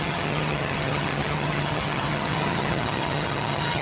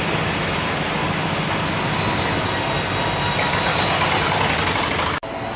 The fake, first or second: first